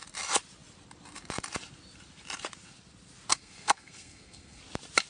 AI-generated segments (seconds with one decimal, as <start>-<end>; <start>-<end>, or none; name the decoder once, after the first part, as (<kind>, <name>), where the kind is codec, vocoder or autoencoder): 3.3-4.6 (codec, SNAC)